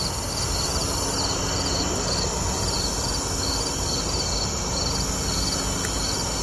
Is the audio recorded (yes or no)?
yes